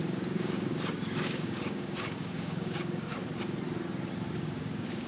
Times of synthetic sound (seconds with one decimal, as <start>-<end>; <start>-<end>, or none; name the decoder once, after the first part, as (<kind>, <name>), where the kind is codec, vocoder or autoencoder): 0.0-3.2 (codec, DAC); 4.3-5.1